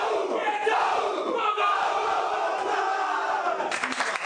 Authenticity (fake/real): fake